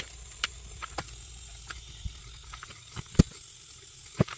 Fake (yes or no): no